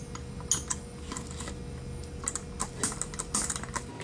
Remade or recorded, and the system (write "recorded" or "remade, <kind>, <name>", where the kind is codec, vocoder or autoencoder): recorded